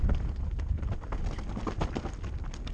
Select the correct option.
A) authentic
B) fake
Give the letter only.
A